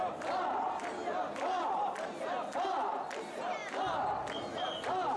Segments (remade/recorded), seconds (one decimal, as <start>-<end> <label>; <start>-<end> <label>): 0.0-5.2 recorded